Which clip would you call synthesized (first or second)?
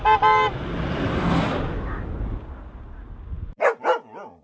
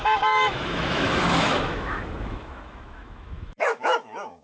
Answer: second